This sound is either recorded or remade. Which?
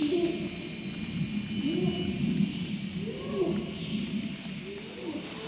recorded